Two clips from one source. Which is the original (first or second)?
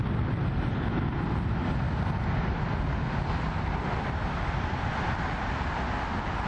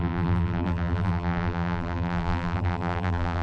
first